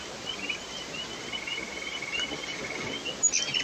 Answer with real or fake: real